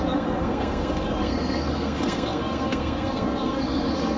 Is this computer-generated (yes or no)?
yes